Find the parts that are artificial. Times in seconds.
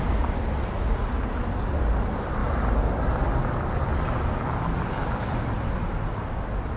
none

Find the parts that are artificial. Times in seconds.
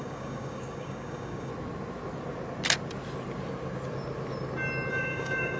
0.0-1.5 (codec, DAC); 4.9-5.6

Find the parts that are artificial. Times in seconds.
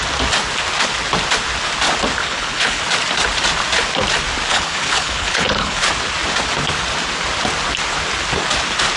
2.2-2.8 (codec, HILCodec); 4.5-5.9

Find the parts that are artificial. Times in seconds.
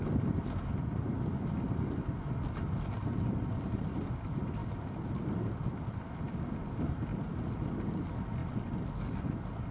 none